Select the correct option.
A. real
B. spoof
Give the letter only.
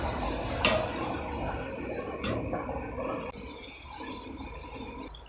A